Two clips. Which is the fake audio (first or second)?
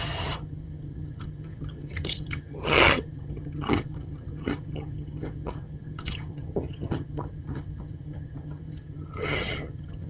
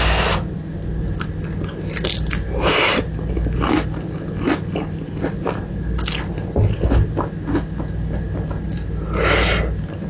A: first